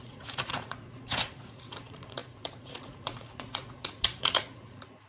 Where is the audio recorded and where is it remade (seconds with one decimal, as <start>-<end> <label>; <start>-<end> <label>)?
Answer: 0.0-5.1 remade